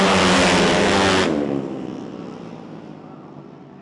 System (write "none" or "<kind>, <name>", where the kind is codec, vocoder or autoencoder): none